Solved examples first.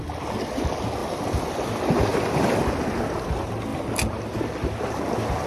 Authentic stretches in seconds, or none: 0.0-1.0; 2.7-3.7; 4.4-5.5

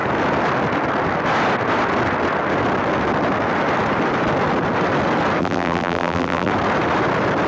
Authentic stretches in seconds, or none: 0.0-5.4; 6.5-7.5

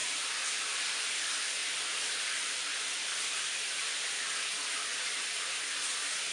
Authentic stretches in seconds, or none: 0.0-1.6; 5.4-6.3

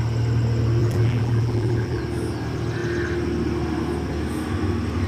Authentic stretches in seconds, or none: 0.0-0.8; 2.0-5.1

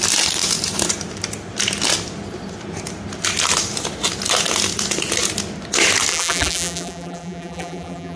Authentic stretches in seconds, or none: 0.0-6.1